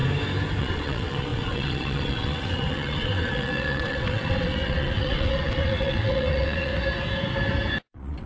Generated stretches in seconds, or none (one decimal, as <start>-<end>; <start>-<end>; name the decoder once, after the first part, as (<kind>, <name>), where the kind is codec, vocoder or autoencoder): 0.6-6.7 (vocoder, WaveNeXt); 7.9-8.3

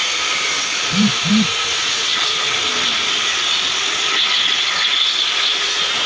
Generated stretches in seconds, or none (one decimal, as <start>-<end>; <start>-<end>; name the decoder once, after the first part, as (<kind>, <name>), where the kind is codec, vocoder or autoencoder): 1.0-2.1 (vocoder, Vocos); 5.4-6.1

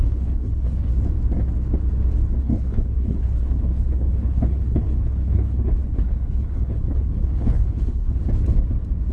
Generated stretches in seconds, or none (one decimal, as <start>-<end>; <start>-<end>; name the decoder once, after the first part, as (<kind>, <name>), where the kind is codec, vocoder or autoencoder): 0.0-0.9 (codec, HILCodec); 2.4-8.2

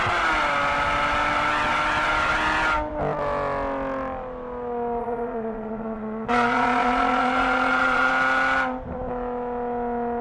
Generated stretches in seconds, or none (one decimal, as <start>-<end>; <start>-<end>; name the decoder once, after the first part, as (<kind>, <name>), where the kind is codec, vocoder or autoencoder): 5.0-8.1 (vocoder, Vocos)

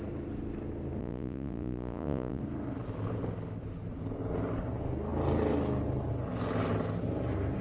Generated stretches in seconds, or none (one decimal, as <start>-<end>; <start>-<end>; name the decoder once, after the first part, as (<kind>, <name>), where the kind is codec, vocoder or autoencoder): 1.0-2.4 (vocoder, Vocos)

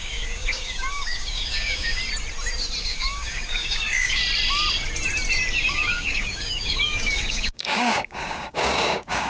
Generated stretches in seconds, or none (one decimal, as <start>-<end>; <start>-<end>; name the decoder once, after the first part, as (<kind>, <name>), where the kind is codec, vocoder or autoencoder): 0.0-2.0 (codec, DAC); 2.8-4.2; 5.7-9.3

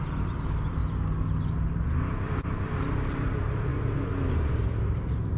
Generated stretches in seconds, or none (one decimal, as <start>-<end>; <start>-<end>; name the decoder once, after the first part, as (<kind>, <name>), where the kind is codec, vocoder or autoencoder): 0.0-0.8 (vocoder, BigVGAN v2); 2.3-3.7; 4.3-5.4